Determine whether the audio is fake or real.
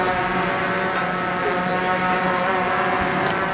real